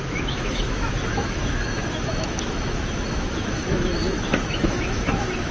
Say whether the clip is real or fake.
fake